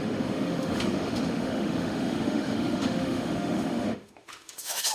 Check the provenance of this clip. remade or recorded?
remade